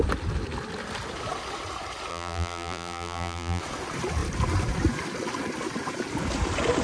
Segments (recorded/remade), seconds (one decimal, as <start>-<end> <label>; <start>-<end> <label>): 0.0-2.1 recorded; 2.1-3.6 remade; 3.6-6.8 recorded

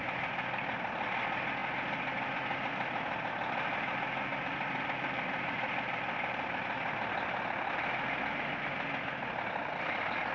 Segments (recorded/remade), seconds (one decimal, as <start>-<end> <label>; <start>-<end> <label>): 0.0-4.3 recorded; 4.3-8.2 remade; 8.2-10.3 recorded